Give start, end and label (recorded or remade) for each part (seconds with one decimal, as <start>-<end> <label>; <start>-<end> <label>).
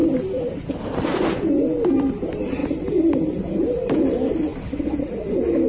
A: 0.0-2.0 recorded; 2.0-2.6 remade; 2.6-4.1 recorded; 4.1-4.5 remade; 4.5-5.0 recorded; 5.0-5.7 remade